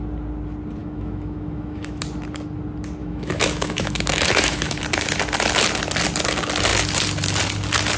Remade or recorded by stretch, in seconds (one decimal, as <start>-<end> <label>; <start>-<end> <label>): 0.0-0.8 recorded; 0.8-2.0 remade; 2.0-3.0 recorded; 3.0-4.8 remade; 4.8-8.0 recorded